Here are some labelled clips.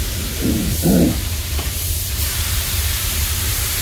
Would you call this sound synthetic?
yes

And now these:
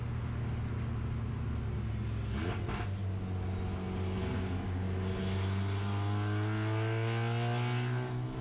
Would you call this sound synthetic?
no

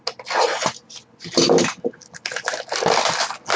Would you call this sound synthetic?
no